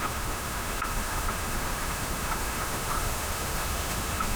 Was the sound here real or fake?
fake